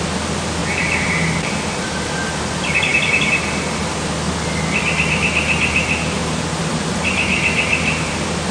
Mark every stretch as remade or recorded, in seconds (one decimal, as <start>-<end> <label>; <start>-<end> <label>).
0.0-0.6 recorded; 0.6-1.6 remade; 1.6-8.5 recorded